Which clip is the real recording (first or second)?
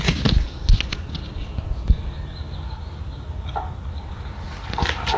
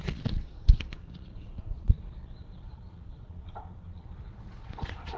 first